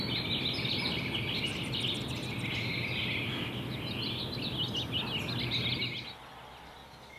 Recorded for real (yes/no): yes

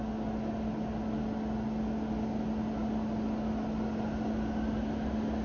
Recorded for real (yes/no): yes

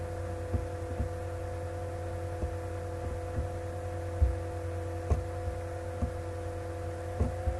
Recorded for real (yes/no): yes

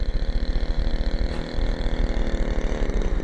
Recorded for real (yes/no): no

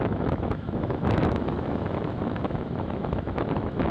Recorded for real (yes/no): no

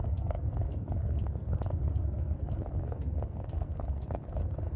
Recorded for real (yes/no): no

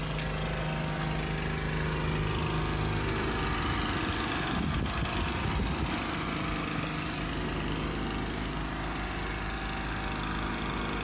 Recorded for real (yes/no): yes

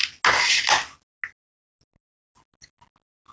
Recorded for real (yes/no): yes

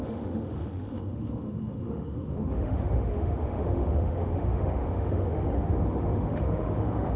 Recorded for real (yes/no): no